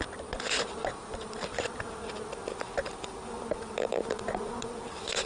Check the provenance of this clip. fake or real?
fake